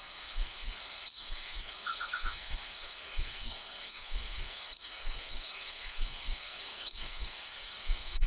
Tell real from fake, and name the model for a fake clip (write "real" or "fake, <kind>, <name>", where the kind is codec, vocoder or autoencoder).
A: fake, codec, SNAC